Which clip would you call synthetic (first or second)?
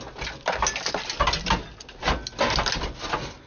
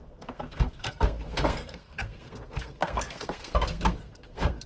second